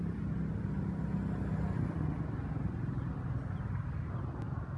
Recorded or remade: recorded